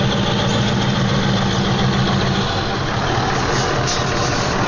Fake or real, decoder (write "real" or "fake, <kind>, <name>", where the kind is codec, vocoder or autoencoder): real